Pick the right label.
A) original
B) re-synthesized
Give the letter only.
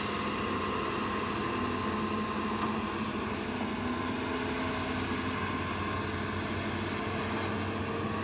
A